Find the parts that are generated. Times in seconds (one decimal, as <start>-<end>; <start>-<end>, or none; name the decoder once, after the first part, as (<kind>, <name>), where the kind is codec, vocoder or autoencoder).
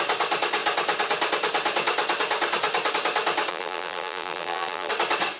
3.5-4.9 (vocoder, BigVGAN v2)